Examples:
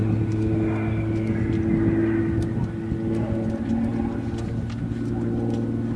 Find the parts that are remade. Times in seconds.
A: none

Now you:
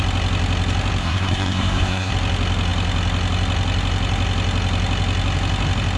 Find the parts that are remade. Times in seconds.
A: 1.0-2.1 (codec, SNAC)

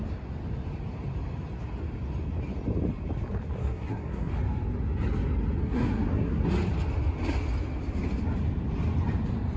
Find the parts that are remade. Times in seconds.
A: 3.6-4.3 (codec, SNAC); 5.6-6.4

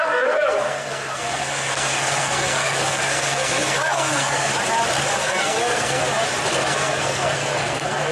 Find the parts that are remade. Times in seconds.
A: 0.0-4.5 (codec, SNAC); 5.2-6.0; 6.5-8.1

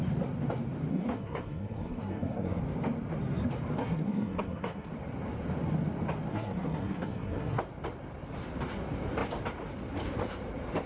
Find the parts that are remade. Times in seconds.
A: 0.9-2.6 (codec, SNAC); 3.8-4.9; 6.3-7.6

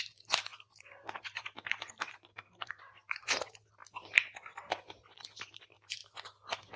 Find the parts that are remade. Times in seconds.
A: 2.3-2.8 (codec, SNAC)

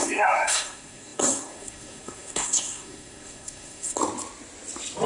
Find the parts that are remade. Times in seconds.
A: 0.0-4.0 (codec, SNAC)